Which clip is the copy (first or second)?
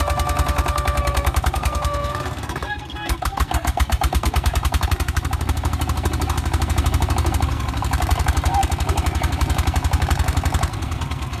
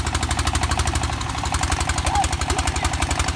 first